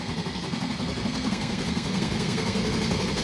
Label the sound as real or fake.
fake